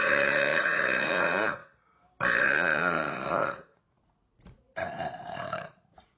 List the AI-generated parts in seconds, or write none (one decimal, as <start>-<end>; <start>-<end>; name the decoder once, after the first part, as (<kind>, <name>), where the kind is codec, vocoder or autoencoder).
0.0-1.6 (vocoder, Vocos); 2.4-4.6; 5.2-6.2